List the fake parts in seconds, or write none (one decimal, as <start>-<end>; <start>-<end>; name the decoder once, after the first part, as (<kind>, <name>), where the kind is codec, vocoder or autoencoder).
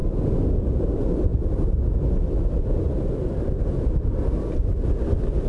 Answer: none